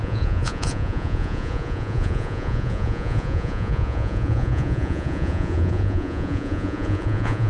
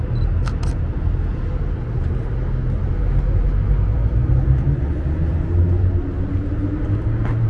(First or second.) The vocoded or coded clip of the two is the first